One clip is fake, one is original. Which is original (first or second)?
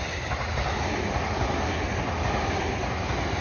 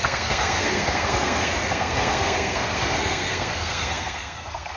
first